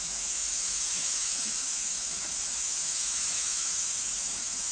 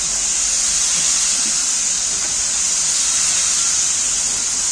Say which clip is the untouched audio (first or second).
second